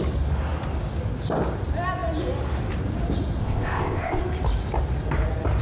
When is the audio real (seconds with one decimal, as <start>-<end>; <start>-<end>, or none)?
0.0-3.4; 4.2-5.6